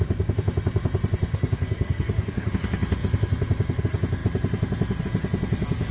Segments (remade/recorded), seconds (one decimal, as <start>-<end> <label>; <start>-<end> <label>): 0.0-1.3 recorded; 1.3-2.5 remade; 2.5-5.9 recorded